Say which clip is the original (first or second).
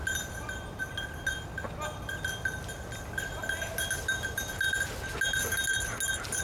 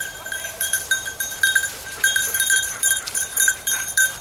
first